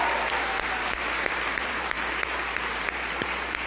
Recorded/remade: remade